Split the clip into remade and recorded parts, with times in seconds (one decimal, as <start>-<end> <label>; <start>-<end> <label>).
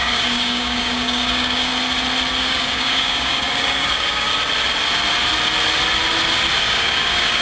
0.0-1.7 remade; 1.7-2.4 recorded; 2.4-4.3 remade; 4.3-6.6 recorded; 6.6-7.4 remade